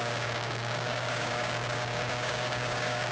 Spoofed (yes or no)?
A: yes